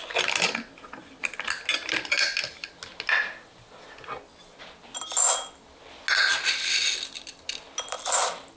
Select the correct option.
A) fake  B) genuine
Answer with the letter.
B